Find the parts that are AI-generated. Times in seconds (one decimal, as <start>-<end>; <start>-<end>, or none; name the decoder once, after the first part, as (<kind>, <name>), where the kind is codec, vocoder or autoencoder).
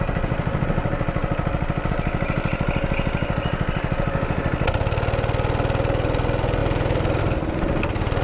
none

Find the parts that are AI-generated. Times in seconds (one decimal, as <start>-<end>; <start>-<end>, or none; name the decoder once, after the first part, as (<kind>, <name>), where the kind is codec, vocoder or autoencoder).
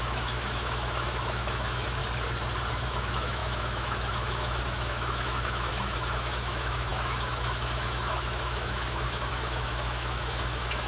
0.0-2.0 (autoencoder, DAC-VAE); 2.7-10.9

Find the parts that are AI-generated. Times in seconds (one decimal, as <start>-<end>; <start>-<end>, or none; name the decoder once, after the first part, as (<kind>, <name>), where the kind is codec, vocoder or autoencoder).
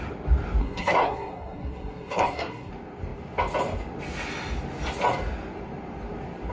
0.6-2.7 (codec, SNAC)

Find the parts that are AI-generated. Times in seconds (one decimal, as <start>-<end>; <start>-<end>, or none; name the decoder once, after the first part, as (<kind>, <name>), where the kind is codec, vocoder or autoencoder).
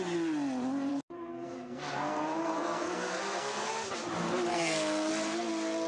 0.9-3.7 (codec, SNAC); 4.5-5.1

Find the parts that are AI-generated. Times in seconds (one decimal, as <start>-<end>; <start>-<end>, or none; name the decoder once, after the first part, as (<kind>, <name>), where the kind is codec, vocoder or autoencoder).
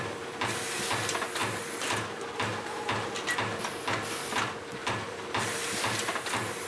0.0-1.4 (vocoder, BigVGAN v2); 4.2-6.7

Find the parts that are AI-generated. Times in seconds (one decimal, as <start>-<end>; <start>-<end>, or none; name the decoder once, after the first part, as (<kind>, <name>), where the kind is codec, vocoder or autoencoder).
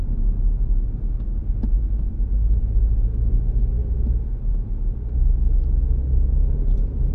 none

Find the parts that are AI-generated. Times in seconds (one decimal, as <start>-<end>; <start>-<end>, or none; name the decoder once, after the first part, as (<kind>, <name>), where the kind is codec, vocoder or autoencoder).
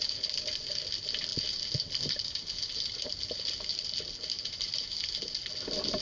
none